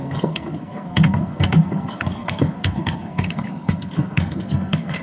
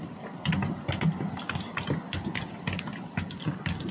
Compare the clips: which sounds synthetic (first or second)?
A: first